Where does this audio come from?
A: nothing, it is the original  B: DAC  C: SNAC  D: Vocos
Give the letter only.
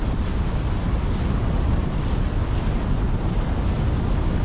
A